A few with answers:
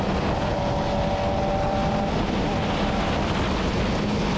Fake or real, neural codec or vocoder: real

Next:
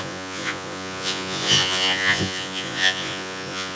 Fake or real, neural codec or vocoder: fake, vocoder, Vocos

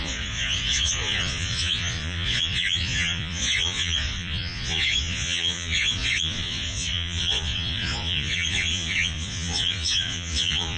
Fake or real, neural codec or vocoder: fake, vocoder, Vocos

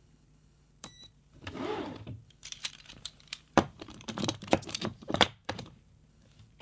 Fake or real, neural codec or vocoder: fake, vocoder, BigVGAN v2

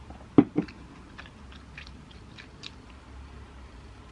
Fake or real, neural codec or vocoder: real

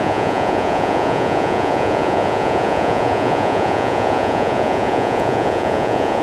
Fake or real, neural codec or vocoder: fake, vocoder, Vocos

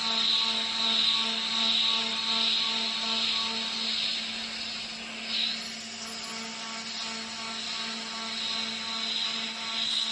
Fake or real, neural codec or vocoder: real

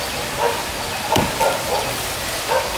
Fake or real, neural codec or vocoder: real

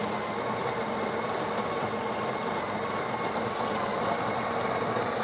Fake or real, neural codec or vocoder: real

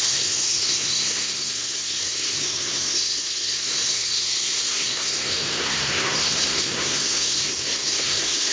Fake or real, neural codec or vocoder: fake, codec, SNAC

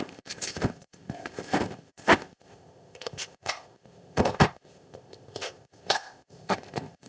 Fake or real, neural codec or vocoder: fake, codec, ZipCodec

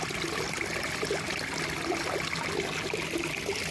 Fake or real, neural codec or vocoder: real